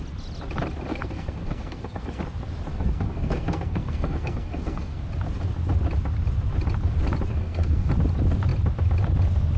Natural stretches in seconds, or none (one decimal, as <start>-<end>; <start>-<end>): 0.0-0.9; 2.2-2.7; 5.0-7.3; 7.9-9.6